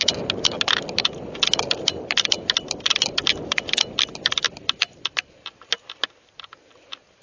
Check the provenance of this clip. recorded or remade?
recorded